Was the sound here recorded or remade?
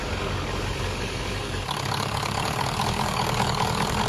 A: remade